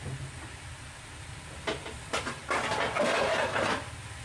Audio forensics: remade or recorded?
recorded